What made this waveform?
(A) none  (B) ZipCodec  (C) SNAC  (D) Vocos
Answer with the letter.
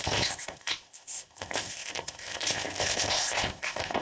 B